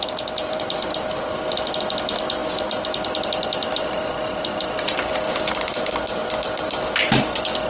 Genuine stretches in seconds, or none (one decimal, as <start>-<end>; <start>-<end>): 0.0-7.7